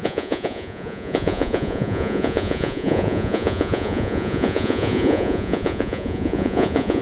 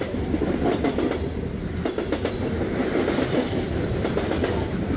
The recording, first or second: second